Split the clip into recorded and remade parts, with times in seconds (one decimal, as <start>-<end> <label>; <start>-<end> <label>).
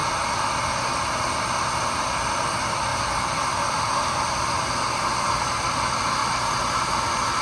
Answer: 0.0-7.4 recorded